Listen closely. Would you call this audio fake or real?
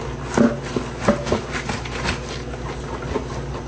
real